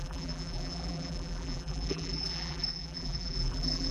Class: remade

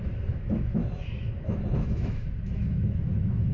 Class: remade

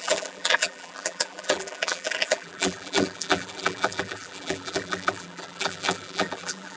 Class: remade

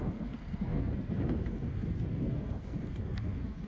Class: remade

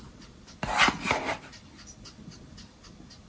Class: recorded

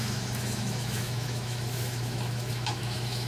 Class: remade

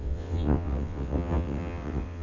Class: remade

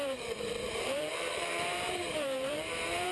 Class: remade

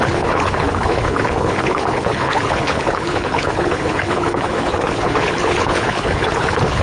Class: remade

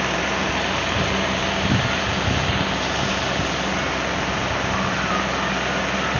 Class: recorded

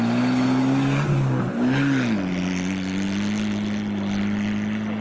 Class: recorded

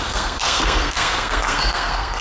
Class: remade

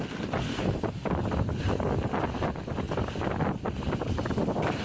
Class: recorded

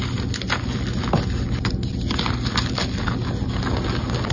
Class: recorded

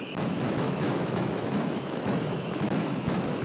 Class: remade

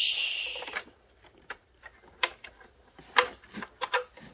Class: recorded